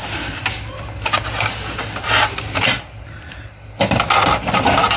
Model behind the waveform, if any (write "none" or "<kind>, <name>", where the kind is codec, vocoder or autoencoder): none